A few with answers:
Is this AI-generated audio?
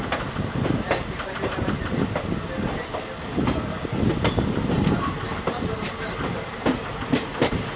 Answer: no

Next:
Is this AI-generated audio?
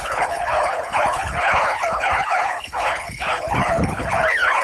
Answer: yes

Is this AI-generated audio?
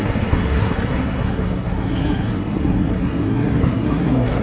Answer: yes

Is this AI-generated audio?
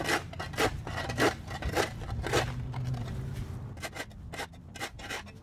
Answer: no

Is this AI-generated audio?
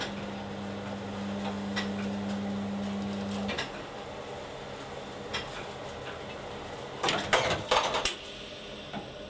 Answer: no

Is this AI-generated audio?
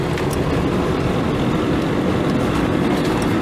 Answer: no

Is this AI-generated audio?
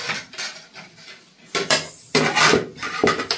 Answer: no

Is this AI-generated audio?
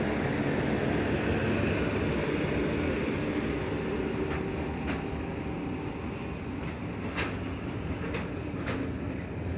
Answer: no